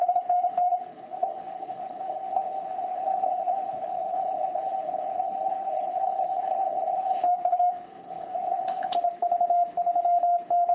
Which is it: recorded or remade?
remade